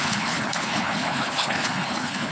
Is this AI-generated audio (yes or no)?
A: yes